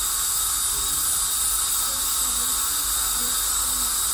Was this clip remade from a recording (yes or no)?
no